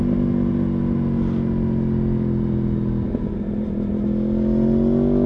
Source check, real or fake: real